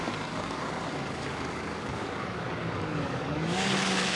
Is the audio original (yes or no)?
no